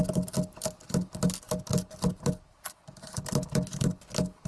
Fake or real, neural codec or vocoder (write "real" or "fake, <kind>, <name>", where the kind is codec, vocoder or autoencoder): real